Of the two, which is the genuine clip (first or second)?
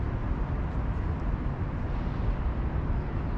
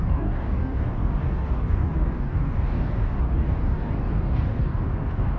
first